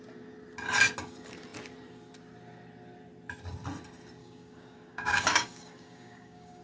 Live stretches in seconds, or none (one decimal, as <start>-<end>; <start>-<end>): 0.0-4.2